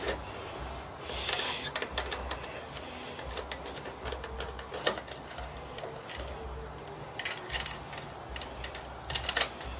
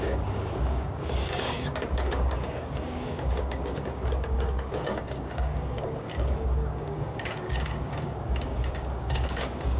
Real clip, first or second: first